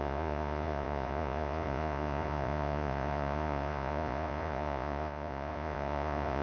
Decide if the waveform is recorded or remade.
remade